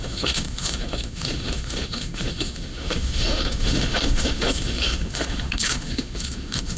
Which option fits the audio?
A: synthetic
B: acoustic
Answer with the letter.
A